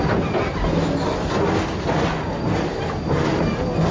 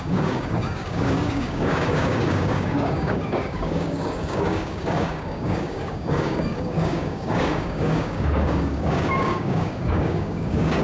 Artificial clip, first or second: second